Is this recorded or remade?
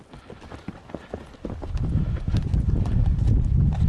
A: recorded